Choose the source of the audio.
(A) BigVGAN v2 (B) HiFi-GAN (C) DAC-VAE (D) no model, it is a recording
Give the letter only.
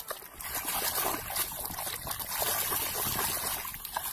D